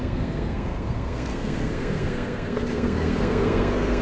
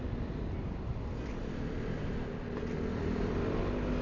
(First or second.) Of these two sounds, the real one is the second